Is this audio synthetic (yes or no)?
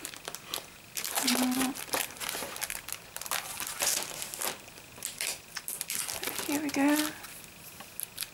no